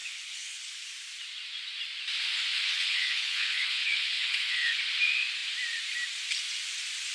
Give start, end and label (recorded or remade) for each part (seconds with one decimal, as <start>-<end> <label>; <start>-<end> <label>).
0.0-0.7 remade; 0.7-2.5 recorded; 2.5-4.8 remade; 4.8-7.1 recorded